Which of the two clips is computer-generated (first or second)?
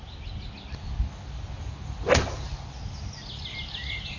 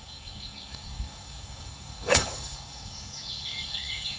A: second